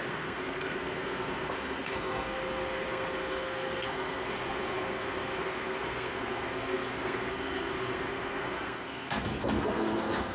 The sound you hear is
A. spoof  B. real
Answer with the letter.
A